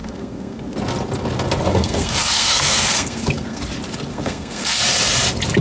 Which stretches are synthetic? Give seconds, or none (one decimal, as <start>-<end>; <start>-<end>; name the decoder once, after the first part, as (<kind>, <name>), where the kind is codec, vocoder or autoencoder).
0.0-0.6 (codec, SNAC); 1.7-3.6; 4.1-4.8